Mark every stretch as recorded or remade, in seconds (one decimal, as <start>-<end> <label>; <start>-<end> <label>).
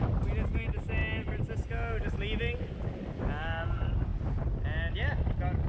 0.0-5.7 recorded